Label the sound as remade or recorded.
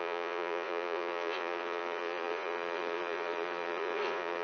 remade